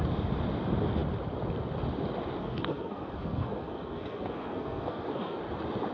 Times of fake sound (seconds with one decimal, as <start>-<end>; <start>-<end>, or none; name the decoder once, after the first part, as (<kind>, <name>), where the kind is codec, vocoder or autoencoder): 2.4-5.4 (codec, SNAC)